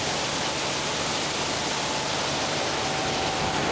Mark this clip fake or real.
real